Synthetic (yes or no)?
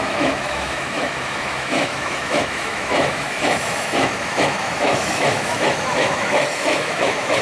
yes